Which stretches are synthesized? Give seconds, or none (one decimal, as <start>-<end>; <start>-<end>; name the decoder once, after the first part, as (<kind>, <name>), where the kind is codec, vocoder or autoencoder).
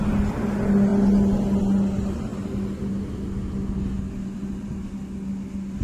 none